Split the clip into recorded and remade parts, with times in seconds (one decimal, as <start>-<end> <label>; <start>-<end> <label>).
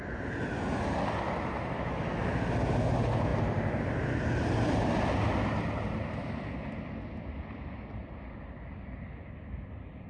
0.0-10.1 recorded